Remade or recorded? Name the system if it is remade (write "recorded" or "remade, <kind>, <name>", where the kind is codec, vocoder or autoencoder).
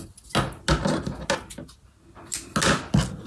recorded